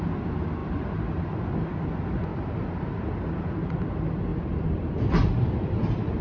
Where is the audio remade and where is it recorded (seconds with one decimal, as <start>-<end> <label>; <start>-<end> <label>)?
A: 0.0-2.3 recorded; 2.3-3.7 remade; 3.7-4.3 recorded; 4.3-5.0 remade; 5.0-6.2 recorded